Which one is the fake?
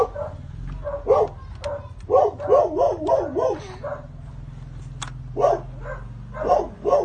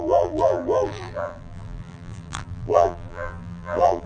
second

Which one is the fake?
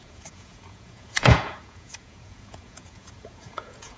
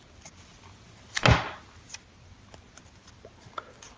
first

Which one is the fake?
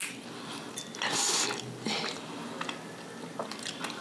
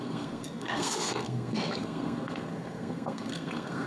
second